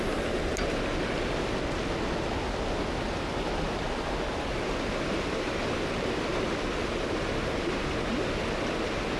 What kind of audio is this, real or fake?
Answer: real